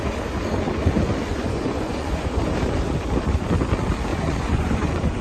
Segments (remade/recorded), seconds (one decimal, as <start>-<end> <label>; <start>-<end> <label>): 0.0-1.3 recorded; 1.3-2.4 remade; 2.4-4.1 recorded; 4.1-5.2 remade